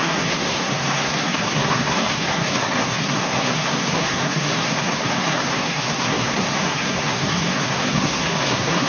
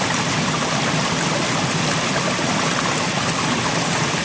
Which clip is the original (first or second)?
second